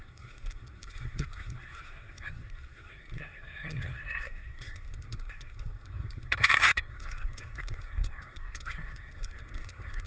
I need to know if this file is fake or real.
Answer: fake